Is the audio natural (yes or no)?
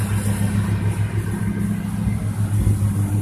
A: yes